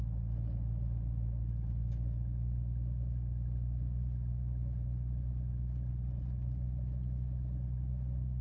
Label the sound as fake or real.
real